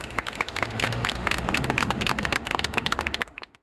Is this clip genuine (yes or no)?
no